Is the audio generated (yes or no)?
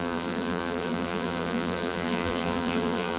yes